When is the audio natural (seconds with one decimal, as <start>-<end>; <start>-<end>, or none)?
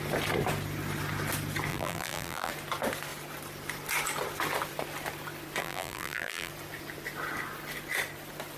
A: 0.0-1.7; 2.5-5.6; 6.5-8.6